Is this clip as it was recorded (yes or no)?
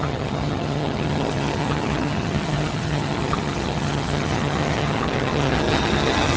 no